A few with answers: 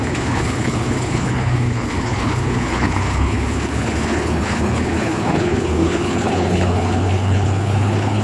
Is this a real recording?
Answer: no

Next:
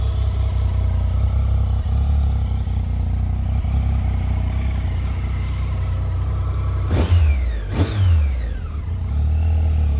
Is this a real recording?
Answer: yes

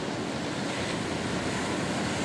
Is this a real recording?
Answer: yes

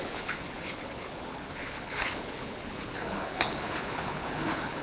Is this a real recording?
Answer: no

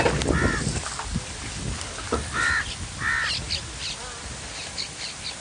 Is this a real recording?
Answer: yes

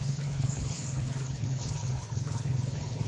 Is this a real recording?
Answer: no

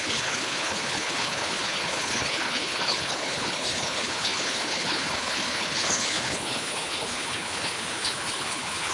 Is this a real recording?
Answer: no